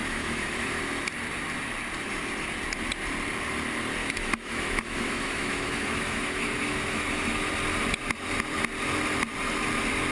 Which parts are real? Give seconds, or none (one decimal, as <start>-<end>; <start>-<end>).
0.8-4.0; 7.5-10.1